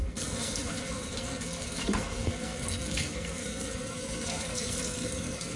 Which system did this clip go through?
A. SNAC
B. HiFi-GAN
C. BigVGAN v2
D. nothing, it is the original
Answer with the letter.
A